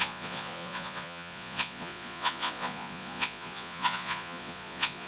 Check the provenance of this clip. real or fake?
fake